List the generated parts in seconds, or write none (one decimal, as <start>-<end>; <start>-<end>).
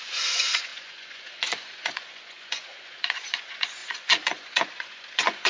0.0-5.5